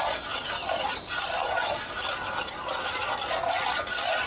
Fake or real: real